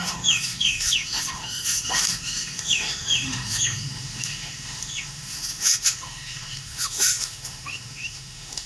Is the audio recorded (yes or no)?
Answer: no